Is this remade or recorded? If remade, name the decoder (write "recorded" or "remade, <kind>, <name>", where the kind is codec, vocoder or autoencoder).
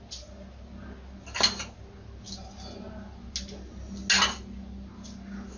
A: recorded